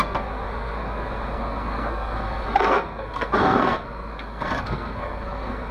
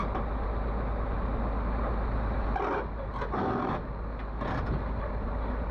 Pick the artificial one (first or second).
first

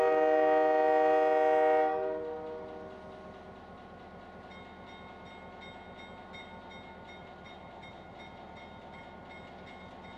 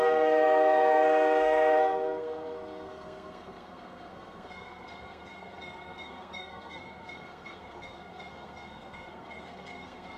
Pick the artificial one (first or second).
second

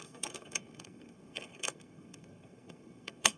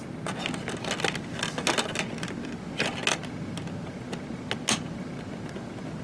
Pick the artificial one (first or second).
first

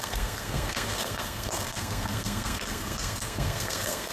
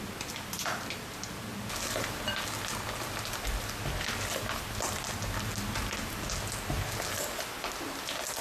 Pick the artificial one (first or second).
first